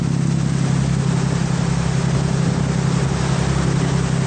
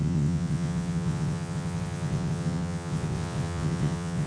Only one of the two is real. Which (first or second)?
first